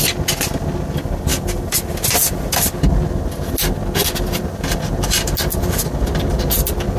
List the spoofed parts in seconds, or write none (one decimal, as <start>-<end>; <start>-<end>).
none